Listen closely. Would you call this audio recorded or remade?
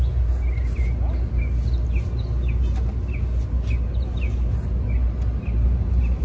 recorded